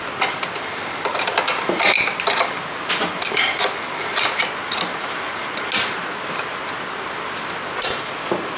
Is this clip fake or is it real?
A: real